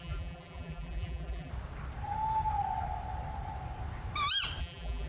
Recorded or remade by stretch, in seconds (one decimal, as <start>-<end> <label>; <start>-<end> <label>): 0.0-1.5 remade; 1.5-4.6 recorded; 4.6-5.1 remade